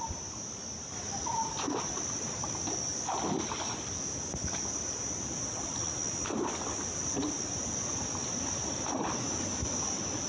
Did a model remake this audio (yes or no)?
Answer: no